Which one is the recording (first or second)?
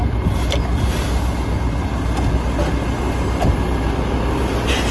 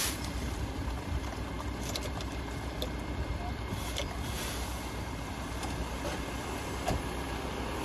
first